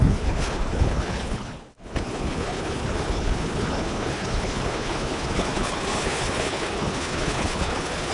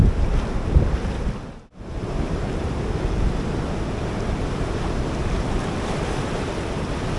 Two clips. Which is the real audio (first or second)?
second